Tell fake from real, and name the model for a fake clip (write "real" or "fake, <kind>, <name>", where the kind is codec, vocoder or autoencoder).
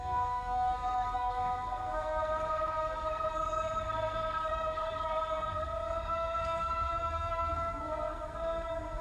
fake, codec, SNAC